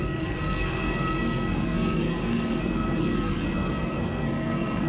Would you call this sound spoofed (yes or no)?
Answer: yes